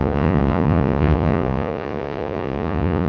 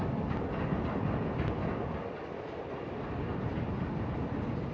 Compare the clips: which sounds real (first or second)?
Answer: second